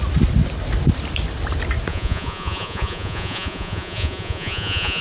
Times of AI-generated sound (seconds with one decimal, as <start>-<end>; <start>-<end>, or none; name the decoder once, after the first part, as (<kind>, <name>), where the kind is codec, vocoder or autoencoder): 1.9-5.0 (vocoder, Vocos)